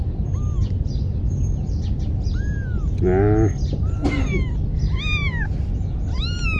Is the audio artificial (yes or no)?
no